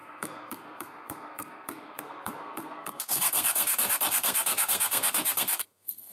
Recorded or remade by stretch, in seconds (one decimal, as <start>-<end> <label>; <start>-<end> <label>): 0.0-6.1 remade